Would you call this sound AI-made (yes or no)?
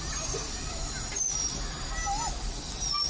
no